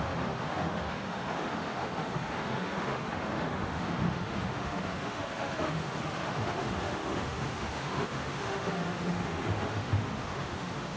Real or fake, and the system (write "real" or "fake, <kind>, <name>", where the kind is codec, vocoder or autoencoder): fake, autoencoder, DAC-VAE